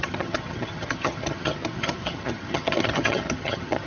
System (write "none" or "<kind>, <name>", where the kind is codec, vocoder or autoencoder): vocoder, HiFi-GAN